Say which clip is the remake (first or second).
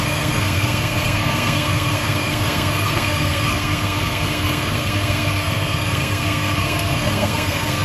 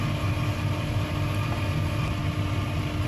first